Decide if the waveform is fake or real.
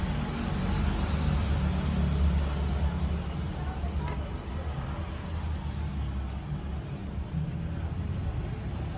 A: real